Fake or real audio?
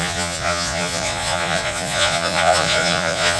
fake